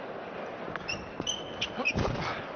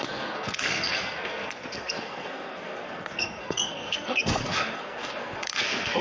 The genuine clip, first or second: first